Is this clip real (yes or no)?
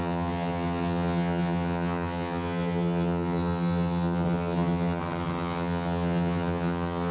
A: no